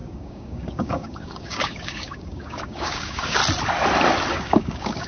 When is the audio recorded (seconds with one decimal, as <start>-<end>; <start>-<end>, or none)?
3.4-4.3